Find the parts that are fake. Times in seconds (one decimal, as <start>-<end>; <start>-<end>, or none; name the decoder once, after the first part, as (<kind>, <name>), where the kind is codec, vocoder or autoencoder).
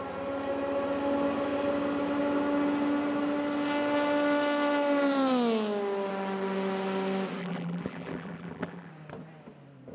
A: 7.4-8.9 (vocoder, BigVGAN v2)